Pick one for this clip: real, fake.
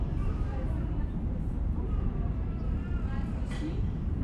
fake